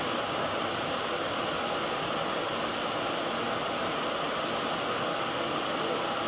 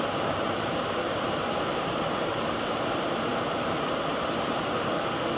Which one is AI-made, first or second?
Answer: second